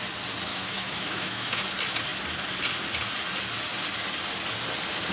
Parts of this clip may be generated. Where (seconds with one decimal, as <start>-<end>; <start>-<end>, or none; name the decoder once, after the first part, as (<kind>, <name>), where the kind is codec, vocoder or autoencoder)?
0.5-1.6 (autoencoder, DAC-VAE)